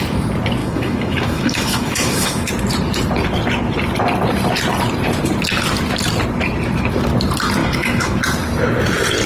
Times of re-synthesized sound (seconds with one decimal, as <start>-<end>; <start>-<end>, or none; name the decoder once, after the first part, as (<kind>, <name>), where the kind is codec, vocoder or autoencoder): 0.6-2.5 (autoencoder, DAC-VAE); 7.6-8.2